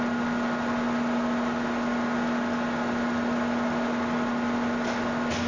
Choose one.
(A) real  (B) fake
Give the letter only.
A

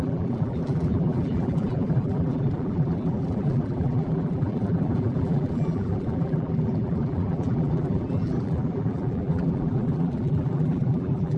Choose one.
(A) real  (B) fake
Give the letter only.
B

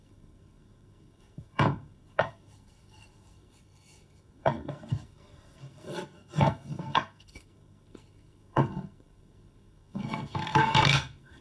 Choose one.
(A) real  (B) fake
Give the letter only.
B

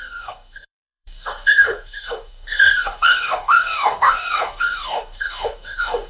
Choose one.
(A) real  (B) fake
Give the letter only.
B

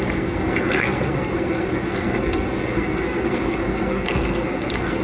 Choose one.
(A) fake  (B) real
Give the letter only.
A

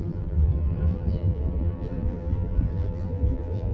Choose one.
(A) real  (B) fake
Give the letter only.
B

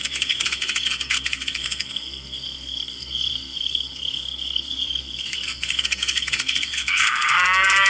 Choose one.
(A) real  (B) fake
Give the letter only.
B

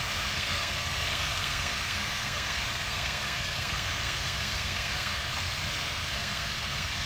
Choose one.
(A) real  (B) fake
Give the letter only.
B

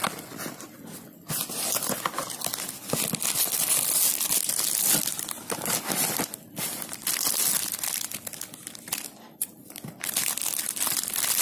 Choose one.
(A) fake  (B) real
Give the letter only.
B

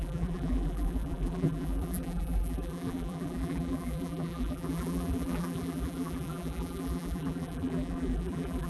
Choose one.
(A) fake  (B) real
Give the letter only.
A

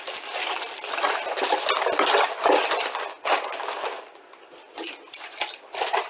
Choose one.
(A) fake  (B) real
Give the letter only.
B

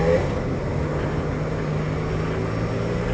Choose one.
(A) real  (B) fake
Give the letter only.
A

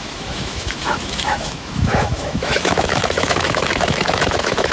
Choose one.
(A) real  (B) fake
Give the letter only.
B